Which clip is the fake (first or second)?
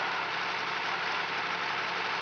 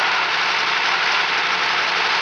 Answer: first